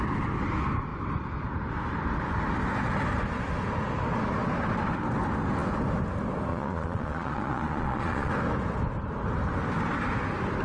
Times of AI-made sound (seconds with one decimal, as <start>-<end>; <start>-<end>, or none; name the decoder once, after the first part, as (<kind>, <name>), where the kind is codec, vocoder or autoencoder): 6.5-8.3 (vocoder, Vocos)